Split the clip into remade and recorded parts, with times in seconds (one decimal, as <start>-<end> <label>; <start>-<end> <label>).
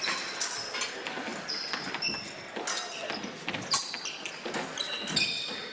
0.0-5.7 recorded